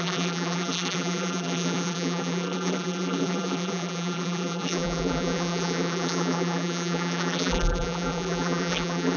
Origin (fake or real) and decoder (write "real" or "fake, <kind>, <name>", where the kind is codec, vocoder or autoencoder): fake, vocoder, BigVGAN v2